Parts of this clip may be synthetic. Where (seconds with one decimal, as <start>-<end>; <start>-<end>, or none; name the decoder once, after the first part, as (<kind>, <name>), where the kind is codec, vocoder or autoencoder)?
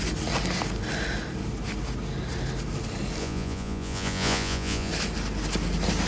3.2-4.9 (vocoder, Vocos)